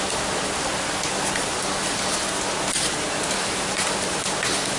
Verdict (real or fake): real